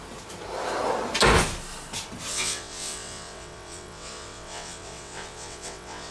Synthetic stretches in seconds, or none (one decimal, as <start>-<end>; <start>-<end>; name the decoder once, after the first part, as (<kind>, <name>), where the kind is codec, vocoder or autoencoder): 2.3-6.1 (vocoder, WaveNeXt)